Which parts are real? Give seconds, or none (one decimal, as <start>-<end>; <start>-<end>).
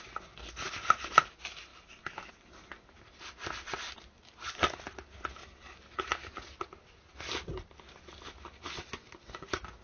0.0-7.5; 8.5-9.8